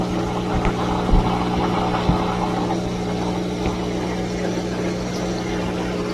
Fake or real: real